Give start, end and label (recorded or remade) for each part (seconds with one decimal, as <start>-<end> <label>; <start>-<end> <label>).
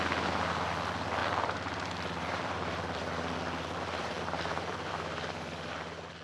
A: 0.0-1.2 recorded; 1.2-4.9 remade; 4.9-6.2 recorded